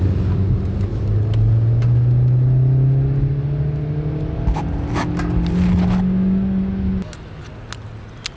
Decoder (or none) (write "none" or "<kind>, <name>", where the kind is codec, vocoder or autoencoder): none